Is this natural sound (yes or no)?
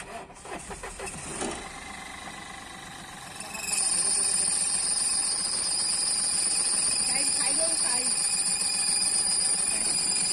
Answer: yes